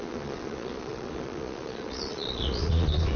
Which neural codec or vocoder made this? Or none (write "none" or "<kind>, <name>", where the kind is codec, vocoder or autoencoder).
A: vocoder, Vocos